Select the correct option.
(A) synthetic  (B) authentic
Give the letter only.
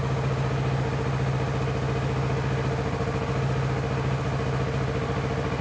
B